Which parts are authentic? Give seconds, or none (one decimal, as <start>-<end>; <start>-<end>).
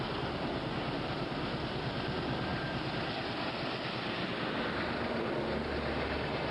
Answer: 0.0-6.5